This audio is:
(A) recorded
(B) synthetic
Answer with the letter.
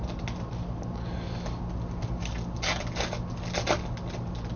A